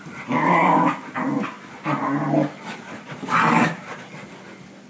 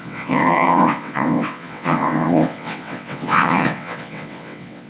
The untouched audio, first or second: first